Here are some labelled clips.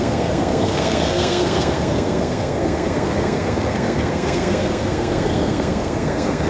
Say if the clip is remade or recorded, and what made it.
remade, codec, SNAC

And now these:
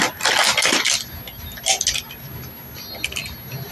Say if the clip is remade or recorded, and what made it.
recorded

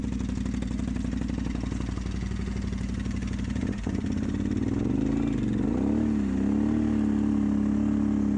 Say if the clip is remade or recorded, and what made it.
recorded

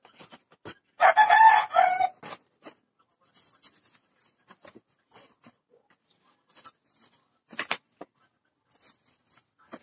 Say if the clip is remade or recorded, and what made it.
recorded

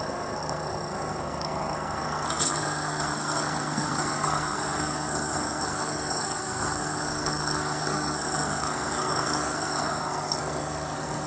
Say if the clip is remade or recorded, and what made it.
remade, codec, SNAC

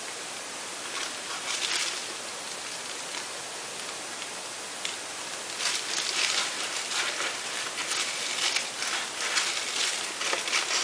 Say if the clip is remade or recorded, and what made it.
recorded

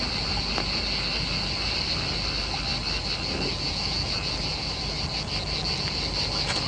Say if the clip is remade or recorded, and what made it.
recorded